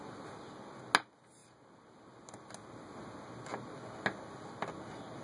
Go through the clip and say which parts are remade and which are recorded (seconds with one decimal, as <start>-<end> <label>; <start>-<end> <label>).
0.0-5.2 recorded